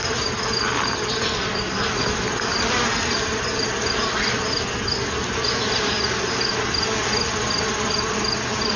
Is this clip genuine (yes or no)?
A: yes